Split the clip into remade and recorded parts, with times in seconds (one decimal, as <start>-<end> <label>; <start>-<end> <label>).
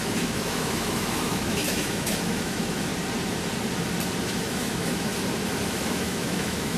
0.0-2.9 remade; 2.9-4.2 recorded; 4.2-5.1 remade; 5.1-5.7 recorded; 5.7-6.8 remade